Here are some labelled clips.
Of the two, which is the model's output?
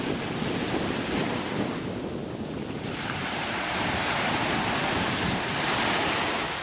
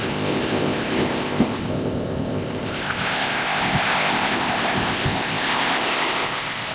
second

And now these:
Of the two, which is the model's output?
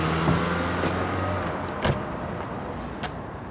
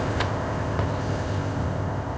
second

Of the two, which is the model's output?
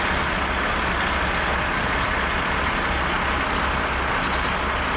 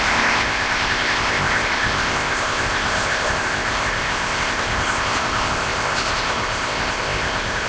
second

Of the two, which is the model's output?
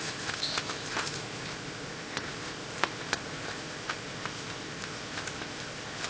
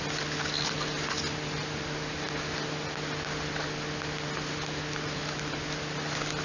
first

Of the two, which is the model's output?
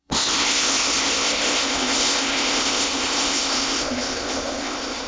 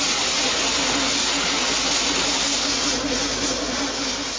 first